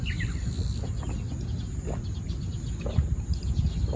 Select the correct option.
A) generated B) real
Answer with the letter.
B